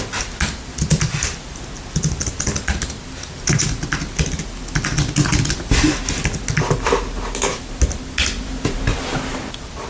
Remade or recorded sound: recorded